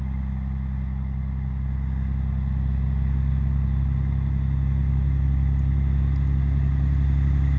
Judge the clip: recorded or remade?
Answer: recorded